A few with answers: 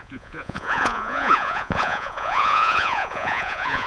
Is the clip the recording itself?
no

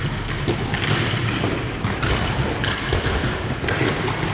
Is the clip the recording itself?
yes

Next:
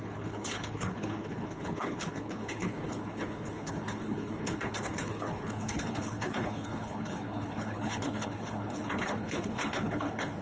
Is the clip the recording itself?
no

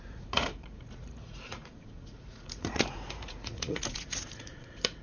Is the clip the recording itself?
no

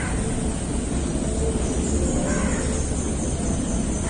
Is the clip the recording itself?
yes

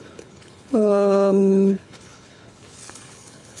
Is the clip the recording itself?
no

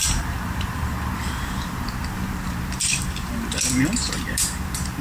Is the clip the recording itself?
no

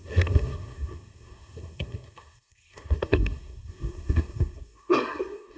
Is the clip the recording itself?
no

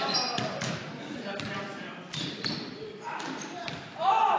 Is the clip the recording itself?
yes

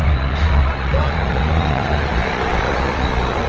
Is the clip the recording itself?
no